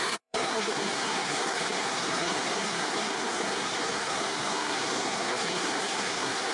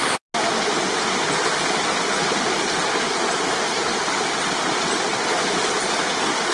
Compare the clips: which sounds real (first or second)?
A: second